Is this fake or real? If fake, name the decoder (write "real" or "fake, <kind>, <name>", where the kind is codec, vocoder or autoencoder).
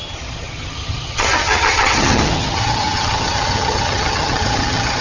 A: fake, vocoder, HiFi-GAN